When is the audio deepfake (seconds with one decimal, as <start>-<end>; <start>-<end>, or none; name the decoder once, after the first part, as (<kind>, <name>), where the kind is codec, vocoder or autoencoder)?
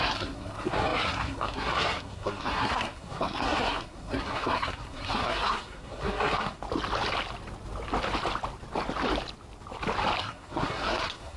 0.0-6.6 (codec, SNAC); 10.2-11.4